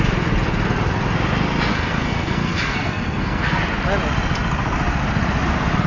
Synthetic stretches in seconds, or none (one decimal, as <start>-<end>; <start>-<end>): 1.7-3.6